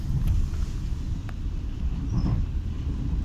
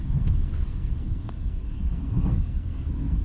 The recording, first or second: first